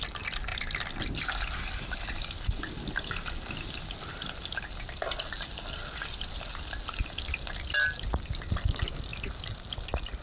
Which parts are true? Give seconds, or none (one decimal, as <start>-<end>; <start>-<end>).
0.0-10.2